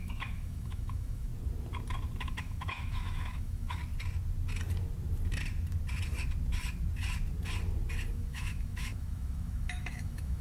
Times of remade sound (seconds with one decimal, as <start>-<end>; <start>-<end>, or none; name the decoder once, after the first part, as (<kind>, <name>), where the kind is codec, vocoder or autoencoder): 0.0-1.3 (autoencoder, DAC-VAE); 2.2-3.8; 8.1-10.4